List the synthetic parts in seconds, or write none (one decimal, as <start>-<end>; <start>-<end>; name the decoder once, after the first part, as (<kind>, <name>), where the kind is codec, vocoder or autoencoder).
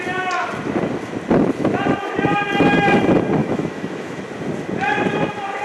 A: 3.4-4.2 (autoencoder, DAC-VAE)